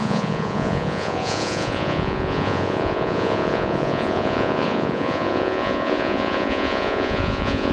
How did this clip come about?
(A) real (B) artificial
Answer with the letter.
B